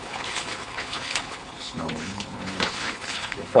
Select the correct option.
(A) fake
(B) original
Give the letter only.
A